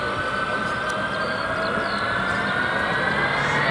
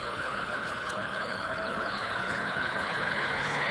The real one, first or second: first